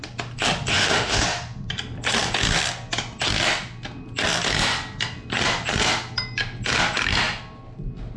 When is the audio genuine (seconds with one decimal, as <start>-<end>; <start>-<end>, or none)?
0.0-0.7; 1.2-8.2